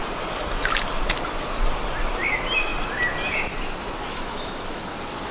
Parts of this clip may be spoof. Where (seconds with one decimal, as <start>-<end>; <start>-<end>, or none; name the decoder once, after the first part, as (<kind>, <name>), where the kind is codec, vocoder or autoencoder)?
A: 4.1-4.8 (autoencoder, DAC-VAE)